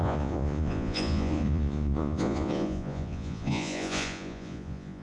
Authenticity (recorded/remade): remade